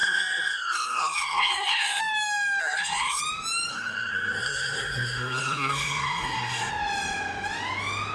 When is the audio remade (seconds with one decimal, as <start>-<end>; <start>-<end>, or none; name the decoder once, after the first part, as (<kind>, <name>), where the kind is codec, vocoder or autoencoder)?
0.0-2.0 (codec, SNAC); 2.6-3.2; 3.7-6.7